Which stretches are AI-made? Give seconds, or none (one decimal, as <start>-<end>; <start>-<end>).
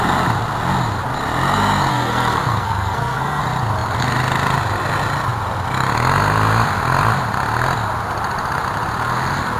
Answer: 1.9-3.4